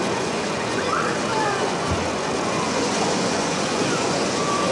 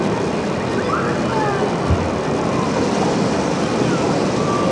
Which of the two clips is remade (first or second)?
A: first